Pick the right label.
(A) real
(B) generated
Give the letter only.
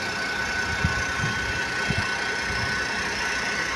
A